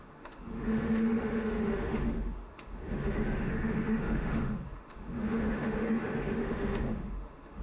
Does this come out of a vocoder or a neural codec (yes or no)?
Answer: yes